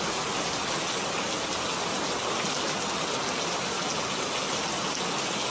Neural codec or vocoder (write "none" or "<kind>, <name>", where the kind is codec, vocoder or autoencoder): none